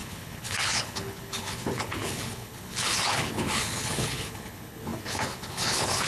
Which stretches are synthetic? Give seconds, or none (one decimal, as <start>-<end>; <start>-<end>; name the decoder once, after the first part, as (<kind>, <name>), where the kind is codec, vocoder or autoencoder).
0.0-6.1 (codec, HILCodec)